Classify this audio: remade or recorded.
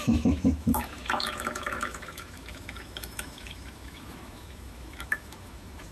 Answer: remade